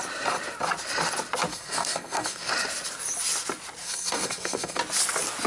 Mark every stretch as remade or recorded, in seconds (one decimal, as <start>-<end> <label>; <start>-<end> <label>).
0.0-1.5 recorded; 1.5-2.5 remade; 2.5-3.8 recorded; 3.8-4.8 remade; 4.8-5.5 recorded